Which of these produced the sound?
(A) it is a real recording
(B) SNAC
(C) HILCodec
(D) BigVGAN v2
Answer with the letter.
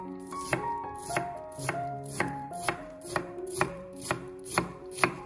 D